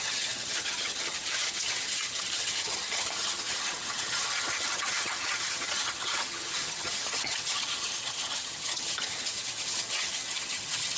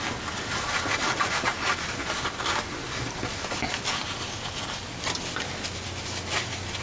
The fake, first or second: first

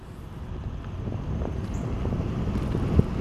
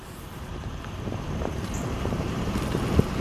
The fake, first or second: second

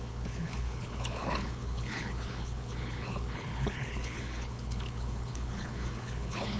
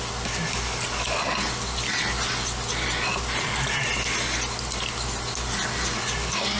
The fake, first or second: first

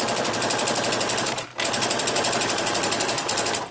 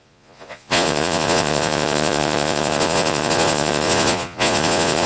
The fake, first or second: second